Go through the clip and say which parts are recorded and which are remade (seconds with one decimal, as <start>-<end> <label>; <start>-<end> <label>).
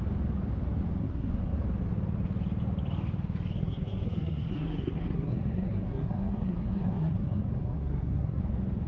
0.0-1.0 recorded; 1.0-1.6 remade; 1.6-3.6 recorded; 3.6-8.4 remade; 8.4-8.9 recorded